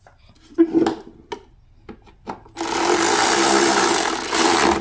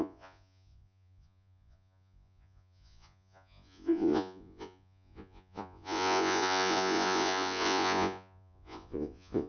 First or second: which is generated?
second